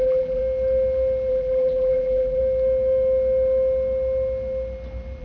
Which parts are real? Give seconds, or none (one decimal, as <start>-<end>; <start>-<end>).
0.4-1.3; 2.4-5.2